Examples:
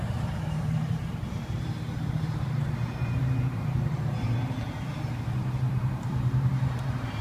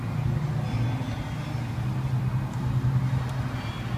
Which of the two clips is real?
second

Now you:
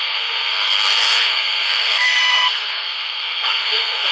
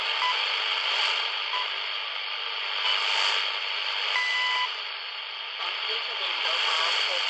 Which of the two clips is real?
second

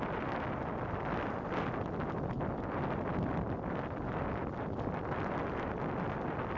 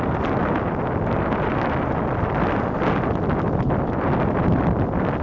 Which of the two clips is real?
first